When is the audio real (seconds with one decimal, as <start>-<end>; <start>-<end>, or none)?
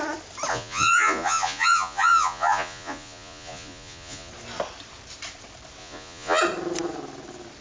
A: 0.0-0.5; 4.3-5.8; 6.4-7.6